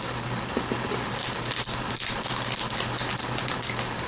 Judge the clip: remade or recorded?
recorded